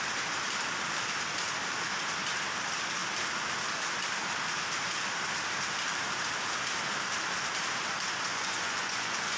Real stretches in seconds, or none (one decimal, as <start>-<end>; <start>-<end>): 0.0-8.3